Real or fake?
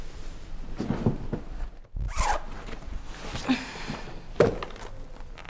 real